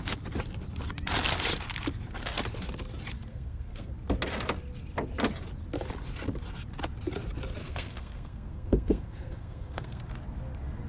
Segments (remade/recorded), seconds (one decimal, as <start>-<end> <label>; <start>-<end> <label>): 0.0-3.3 recorded; 3.3-3.9 remade; 3.9-7.6 recorded; 7.6-10.0 remade; 10.0-10.9 recorded